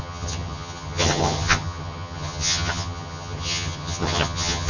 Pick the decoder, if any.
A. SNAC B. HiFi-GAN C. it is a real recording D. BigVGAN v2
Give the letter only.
B